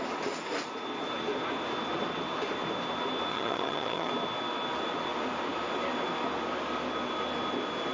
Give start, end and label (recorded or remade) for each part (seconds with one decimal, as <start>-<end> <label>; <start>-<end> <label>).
0.0-3.3 recorded; 3.3-4.1 remade; 4.1-7.9 recorded